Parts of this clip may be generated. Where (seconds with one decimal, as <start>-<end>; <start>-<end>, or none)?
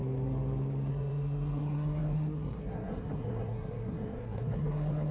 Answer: 0.9-5.1